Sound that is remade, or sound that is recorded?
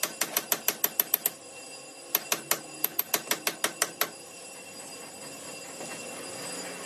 recorded